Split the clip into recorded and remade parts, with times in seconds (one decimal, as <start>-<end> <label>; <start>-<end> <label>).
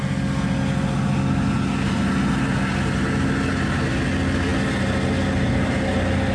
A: 0.0-6.3 recorded